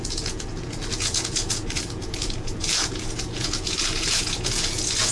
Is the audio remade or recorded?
remade